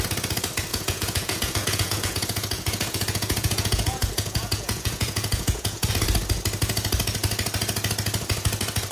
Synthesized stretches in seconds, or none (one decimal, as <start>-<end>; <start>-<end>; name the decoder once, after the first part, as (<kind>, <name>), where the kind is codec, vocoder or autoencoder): 0.7-5.9 (vocoder, Vocos)